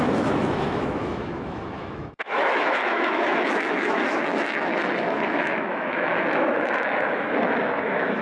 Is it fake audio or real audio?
fake